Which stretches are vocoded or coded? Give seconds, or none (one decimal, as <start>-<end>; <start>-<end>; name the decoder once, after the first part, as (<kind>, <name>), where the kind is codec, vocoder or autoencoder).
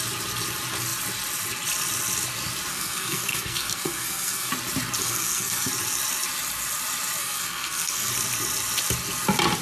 2.7-4.5 (codec, SNAC); 5.0-5.7; 7.2-8.1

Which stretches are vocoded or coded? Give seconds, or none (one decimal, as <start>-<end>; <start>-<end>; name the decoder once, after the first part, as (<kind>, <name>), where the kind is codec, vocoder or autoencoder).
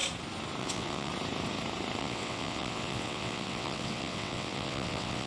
0.6-1.1 (vocoder, WaveNeXt); 2.0-5.3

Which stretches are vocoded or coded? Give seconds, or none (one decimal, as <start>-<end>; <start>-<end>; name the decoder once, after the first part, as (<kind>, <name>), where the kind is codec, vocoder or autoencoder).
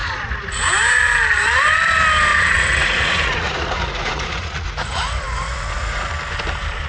0.0-0.6 (vocoder, Vocos); 2.3-6.1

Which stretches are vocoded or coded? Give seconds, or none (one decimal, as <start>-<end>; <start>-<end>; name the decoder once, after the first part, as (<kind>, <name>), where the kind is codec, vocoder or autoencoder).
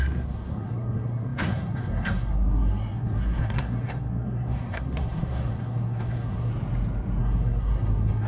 0.0-6.5 (codec, SNAC); 7.2-8.3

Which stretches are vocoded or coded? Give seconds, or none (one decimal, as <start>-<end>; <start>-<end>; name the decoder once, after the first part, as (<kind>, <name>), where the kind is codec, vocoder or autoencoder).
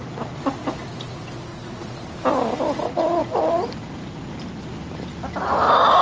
1.5-2.1 (vocoder, Vocos)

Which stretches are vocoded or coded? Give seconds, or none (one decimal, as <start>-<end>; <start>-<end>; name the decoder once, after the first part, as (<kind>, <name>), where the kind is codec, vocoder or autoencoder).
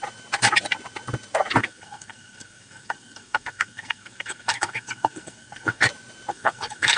1.6-5.8 (codec, SNAC); 6.3-7.0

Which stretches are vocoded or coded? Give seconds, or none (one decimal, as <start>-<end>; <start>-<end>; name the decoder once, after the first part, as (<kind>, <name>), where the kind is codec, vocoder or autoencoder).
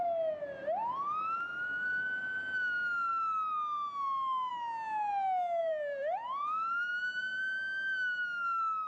5.6-6.9 (vocoder, BigVGAN v2)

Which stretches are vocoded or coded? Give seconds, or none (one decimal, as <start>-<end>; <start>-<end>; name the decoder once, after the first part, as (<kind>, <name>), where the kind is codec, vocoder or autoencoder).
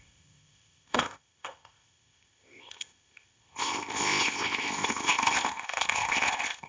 0.0-6.7 (codec, ZipCodec)